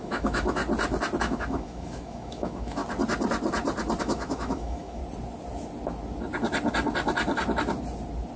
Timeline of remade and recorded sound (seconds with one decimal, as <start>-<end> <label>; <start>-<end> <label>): 0.0-0.6 remade; 0.6-1.2 recorded; 1.2-2.8 remade; 2.8-4.0 recorded; 4.0-5.0 remade; 5.0-8.4 recorded